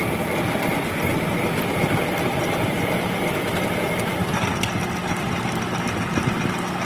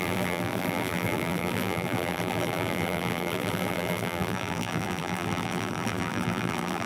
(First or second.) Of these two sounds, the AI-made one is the second